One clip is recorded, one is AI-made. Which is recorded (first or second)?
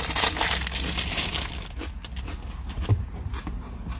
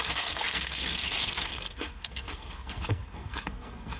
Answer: first